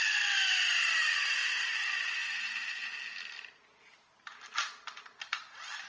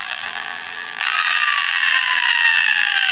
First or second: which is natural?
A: first